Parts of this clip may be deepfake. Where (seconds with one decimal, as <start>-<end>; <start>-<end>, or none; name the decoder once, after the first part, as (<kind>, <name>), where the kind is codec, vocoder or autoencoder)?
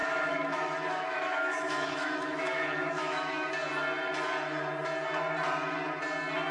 0.0-3.5 (autoencoder, DAC-VAE)